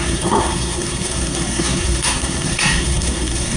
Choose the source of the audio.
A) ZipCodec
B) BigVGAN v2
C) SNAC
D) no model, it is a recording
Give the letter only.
C